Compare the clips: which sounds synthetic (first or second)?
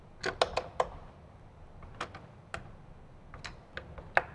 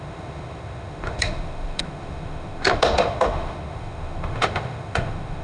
second